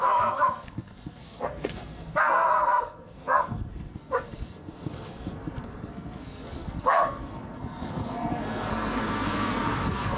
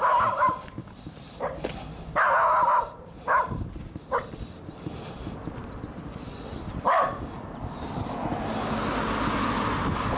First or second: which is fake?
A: first